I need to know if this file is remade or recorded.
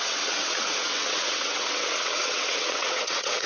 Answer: remade